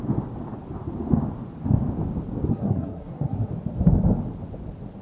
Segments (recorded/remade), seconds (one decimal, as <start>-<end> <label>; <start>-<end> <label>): 0.0-2.5 recorded; 2.5-3.5 remade; 3.5-5.0 recorded